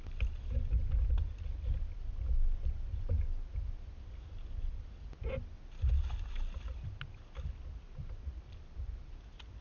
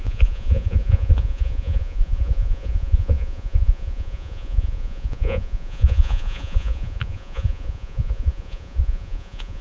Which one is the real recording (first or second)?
first